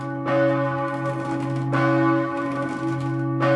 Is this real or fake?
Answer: real